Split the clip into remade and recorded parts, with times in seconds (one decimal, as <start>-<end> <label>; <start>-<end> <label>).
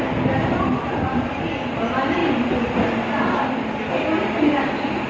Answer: 0.0-5.1 recorded